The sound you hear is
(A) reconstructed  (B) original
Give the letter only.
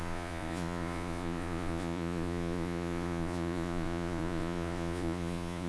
A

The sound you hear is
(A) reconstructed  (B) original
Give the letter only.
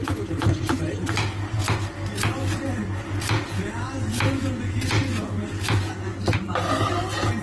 B